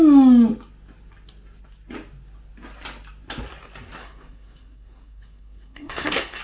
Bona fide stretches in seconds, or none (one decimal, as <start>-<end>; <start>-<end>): 0.0-4.0

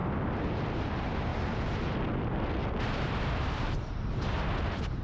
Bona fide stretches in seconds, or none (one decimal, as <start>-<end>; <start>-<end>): 0.5-1.3; 4.1-5.0